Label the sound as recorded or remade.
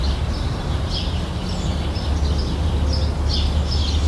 recorded